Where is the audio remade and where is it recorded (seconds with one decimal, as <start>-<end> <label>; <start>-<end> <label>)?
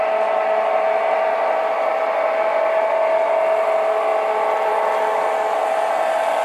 0.0-6.4 recorded